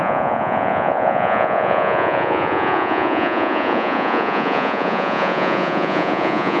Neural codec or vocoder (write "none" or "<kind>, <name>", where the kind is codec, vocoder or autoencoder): vocoder, Vocos